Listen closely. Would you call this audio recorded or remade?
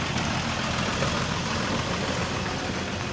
recorded